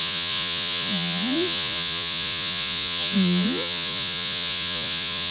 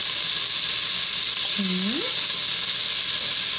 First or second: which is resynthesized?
first